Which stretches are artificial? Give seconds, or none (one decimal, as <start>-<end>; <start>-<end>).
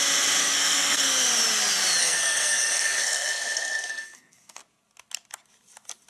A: 0.4-1.3; 2.0-4.6